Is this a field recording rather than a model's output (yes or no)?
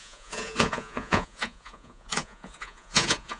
no